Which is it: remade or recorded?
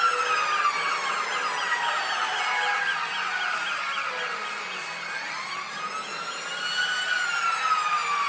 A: recorded